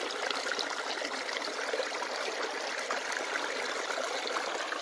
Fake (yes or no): no